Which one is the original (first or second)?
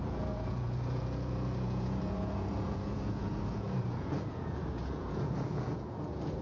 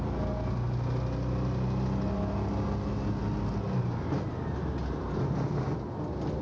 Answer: second